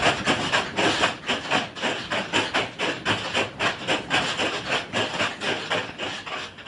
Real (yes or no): yes